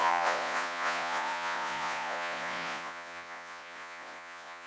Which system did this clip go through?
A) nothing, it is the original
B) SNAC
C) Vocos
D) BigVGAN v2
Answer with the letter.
C